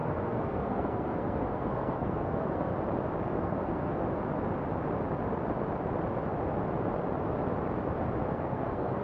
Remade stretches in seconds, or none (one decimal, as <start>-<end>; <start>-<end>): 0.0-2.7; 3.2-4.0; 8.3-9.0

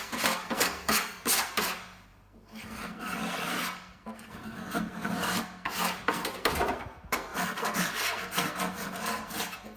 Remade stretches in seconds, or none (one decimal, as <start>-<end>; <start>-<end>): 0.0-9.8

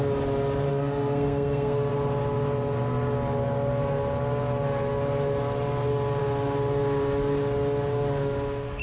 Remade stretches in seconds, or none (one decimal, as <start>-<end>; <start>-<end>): 0.7-1.9

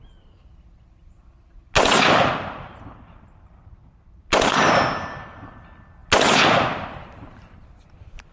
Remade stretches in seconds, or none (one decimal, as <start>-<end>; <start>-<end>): none

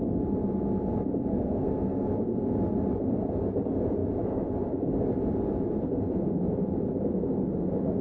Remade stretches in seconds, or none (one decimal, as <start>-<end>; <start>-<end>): 1.3-2.1

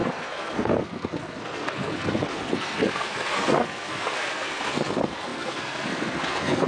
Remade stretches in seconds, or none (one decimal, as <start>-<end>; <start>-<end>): 0.0-6.7

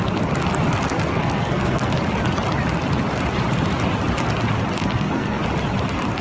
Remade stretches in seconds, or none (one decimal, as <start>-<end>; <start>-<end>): 1.1-1.9; 4.8-5.4